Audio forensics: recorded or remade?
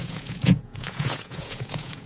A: remade